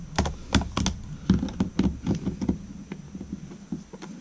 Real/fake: real